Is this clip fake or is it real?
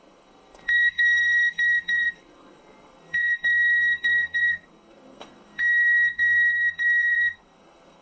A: fake